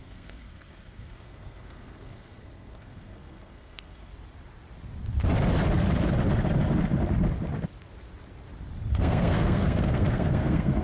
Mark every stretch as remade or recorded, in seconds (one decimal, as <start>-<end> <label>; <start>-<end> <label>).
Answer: 0.0-4.1 remade; 4.1-8.9 recorded; 8.9-10.8 remade